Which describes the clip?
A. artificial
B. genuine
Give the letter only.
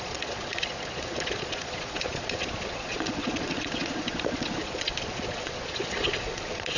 A